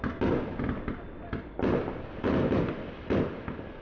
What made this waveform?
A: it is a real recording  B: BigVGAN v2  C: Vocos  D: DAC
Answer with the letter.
A